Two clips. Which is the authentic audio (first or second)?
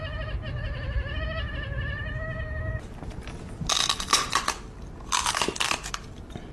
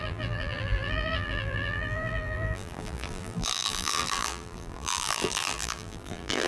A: first